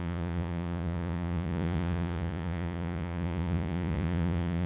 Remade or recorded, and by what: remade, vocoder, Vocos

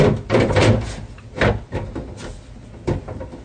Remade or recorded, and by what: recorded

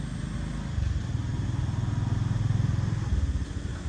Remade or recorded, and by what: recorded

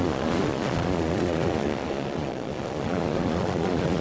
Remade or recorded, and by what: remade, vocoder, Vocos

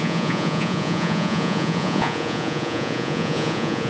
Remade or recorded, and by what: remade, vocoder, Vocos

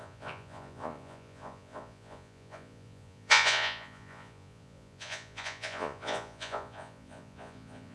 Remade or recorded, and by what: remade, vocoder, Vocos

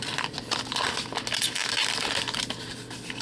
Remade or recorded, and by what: recorded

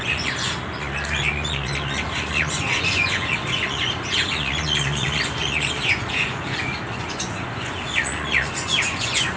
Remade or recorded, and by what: remade, vocoder, Vocos